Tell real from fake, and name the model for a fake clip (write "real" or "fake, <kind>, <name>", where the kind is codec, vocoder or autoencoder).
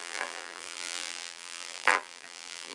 fake, vocoder, BigVGAN v2